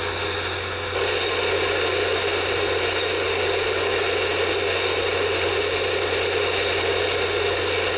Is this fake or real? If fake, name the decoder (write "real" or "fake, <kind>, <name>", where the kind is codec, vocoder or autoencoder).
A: real